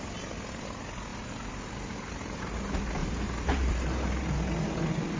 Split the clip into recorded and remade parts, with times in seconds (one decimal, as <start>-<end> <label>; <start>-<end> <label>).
0.0-3.0 recorded; 3.0-5.2 remade

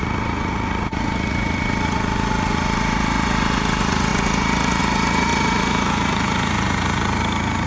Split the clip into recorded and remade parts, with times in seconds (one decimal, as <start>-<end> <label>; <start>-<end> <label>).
0.0-7.7 remade

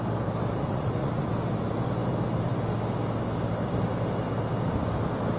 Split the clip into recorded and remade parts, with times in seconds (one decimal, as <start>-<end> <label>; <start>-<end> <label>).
0.0-0.6 recorded; 0.6-1.3 remade; 1.3-5.4 recorded

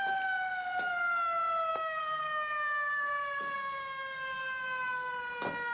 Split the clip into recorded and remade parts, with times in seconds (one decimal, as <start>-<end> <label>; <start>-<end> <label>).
0.0-1.7 recorded; 1.7-5.1 remade; 5.1-5.7 recorded